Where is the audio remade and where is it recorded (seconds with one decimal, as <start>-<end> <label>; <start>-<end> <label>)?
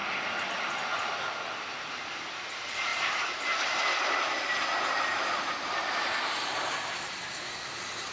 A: 0.0-0.5 remade; 0.5-2.9 recorded; 2.9-4.2 remade; 4.2-5.1 recorded; 5.1-7.3 remade; 7.3-8.1 recorded